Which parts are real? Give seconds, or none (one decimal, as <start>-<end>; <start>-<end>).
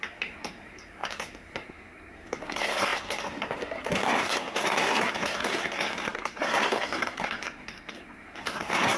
none